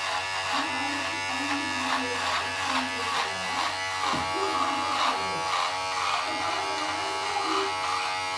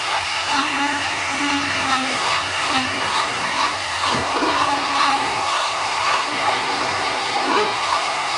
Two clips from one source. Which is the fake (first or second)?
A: second